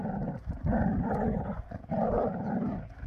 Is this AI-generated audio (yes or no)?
yes